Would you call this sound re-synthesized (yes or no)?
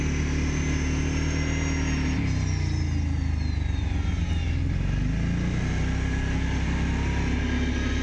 no